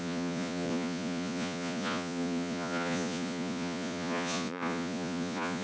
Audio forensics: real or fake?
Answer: fake